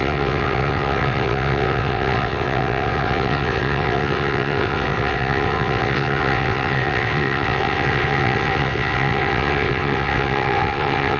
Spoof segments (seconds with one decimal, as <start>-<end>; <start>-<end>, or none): 0.0-11.2